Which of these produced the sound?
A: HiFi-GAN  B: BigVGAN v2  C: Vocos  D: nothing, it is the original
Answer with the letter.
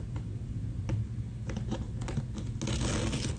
D